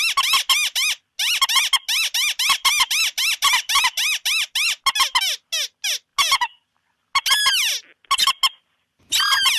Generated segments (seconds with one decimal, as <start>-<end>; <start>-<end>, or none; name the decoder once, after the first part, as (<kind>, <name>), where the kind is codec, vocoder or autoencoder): none